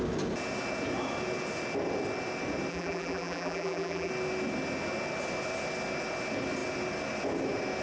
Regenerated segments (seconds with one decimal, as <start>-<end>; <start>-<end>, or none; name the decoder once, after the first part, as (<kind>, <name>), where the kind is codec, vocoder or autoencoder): 2.7-4.1 (vocoder, BigVGAN v2)

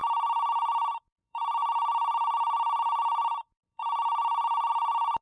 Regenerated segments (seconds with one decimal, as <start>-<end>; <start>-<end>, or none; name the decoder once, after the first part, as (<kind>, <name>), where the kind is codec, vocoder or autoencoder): 0.0-5.2 (vocoder, BigVGAN v2)

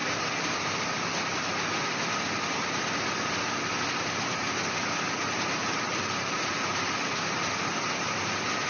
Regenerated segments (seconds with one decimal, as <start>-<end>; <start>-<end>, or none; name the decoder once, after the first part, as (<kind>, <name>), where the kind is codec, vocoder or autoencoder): none

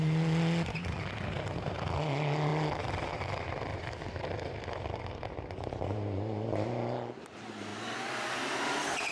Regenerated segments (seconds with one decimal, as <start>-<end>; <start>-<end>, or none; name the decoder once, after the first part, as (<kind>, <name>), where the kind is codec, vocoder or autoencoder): 3.7-4.3 (vocoder, BigVGAN v2)